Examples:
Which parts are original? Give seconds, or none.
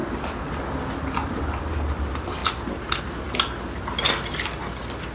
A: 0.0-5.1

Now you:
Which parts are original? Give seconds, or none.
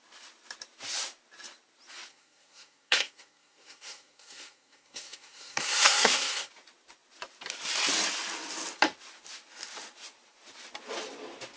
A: 0.0-2.1; 6.5-11.6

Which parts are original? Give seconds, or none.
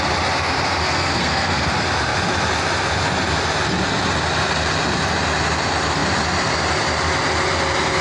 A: 0.0-0.8; 1.7-8.0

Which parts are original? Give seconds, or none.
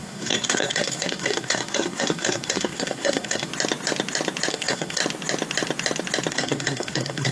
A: 3.5-4.5; 5.0-6.3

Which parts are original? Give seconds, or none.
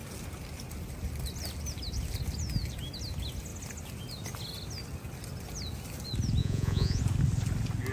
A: 0.0-6.4; 7.0-7.9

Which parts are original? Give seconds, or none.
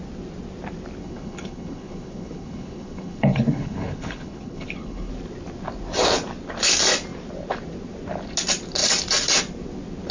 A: 0.0-1.0; 5.1-10.1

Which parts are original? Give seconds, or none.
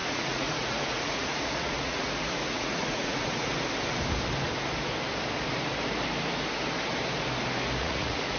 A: 3.5-7.8